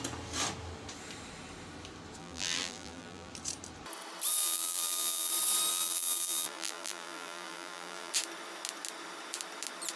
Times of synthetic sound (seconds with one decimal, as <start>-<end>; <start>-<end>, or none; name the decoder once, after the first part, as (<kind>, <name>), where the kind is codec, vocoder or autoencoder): 2.2-3.3 (vocoder, BigVGAN v2); 4.4-5.3; 5.7-8.1